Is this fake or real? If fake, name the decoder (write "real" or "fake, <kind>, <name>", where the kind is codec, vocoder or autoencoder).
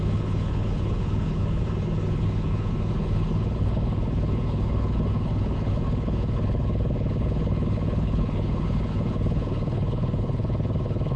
fake, codec, HILCodec